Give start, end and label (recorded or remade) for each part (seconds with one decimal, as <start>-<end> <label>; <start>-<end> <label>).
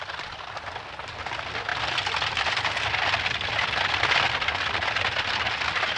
0.0-6.0 recorded